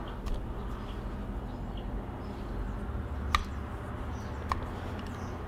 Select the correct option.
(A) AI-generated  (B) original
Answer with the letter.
B